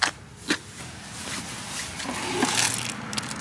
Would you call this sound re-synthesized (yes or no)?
no